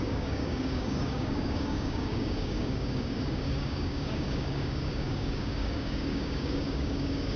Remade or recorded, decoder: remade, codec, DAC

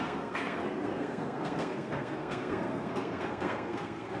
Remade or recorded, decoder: remade, codec, SNAC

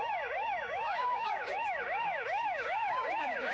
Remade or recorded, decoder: remade, codec, DAC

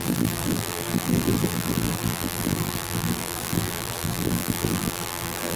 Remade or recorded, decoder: remade, vocoder, BigVGAN v2